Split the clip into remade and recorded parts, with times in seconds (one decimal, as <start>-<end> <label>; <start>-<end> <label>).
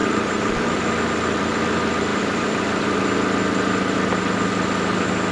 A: 0.0-0.8 remade; 0.8-2.1 recorded; 2.1-2.9 remade; 2.9-5.3 recorded